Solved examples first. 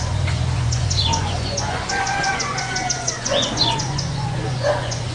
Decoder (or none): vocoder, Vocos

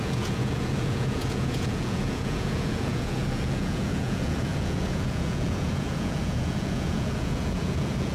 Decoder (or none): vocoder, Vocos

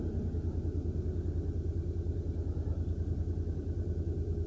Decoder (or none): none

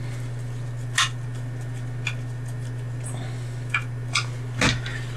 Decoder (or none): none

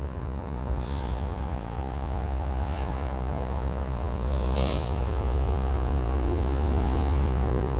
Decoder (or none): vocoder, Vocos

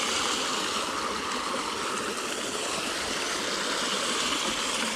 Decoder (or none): none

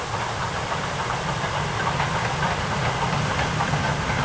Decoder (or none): none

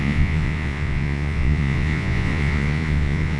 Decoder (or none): vocoder, Vocos